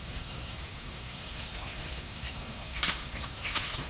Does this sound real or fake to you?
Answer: fake